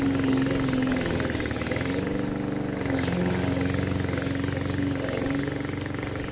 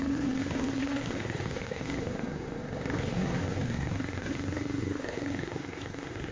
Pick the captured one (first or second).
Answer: first